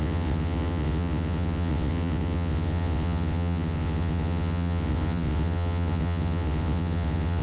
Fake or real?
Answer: fake